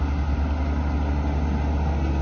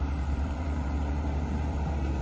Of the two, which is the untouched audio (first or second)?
first